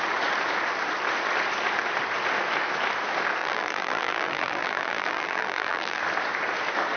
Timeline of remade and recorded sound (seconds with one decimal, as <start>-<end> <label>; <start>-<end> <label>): 0.0-3.4 recorded; 3.4-6.0 remade; 6.0-7.0 recorded